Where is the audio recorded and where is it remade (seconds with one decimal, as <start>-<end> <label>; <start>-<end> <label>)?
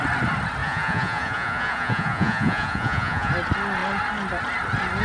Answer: 0.0-0.6 recorded; 0.6-3.3 remade; 3.3-5.0 recorded